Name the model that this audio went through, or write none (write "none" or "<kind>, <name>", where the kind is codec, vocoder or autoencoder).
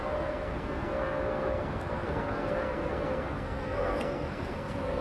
codec, SNAC